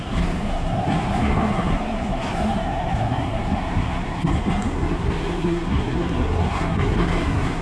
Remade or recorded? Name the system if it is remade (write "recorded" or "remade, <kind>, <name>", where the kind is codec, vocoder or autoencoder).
remade, codec, SNAC